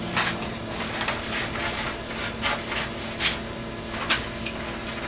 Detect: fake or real real